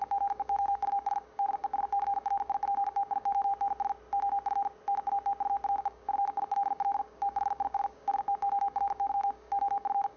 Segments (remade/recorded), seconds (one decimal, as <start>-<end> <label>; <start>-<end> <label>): 0.0-3.5 remade; 3.5-5.8 recorded; 5.8-10.2 remade